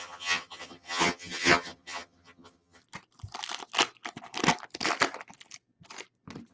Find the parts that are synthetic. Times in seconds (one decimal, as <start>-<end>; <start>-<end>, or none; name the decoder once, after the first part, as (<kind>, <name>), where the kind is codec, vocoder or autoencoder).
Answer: 0.0-2.8 (vocoder, HiFi-GAN)